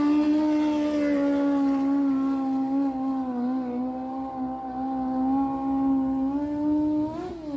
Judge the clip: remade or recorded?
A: recorded